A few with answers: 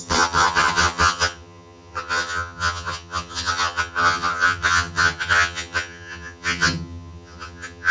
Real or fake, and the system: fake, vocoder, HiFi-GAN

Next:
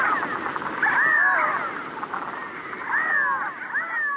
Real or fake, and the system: real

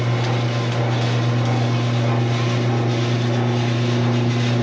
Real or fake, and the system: real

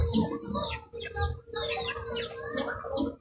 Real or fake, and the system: real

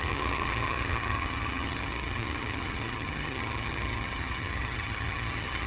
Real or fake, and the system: fake, vocoder, HiFi-GAN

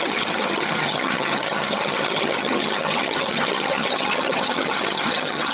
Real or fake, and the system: fake, vocoder, HiFi-GAN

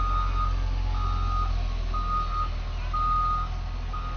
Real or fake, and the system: real